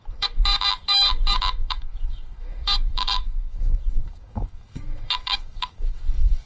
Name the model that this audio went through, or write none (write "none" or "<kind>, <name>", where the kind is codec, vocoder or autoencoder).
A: autoencoder, DAC-VAE